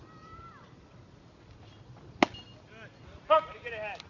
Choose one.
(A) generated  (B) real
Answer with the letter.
B